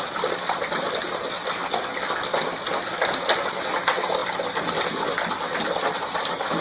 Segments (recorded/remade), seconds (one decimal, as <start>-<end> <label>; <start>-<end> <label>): 0.0-6.6 recorded